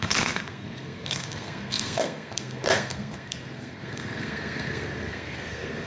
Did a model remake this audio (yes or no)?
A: yes